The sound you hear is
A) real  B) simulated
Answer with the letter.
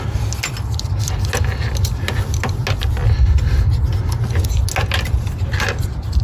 A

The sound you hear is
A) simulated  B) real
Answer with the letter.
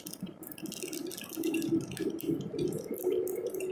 B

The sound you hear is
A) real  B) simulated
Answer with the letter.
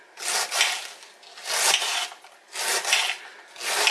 A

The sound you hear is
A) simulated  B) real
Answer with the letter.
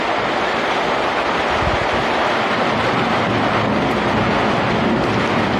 B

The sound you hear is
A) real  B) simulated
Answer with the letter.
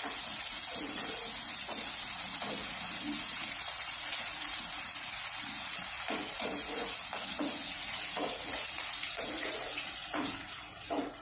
B